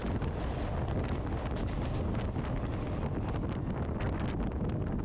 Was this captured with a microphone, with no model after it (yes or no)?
yes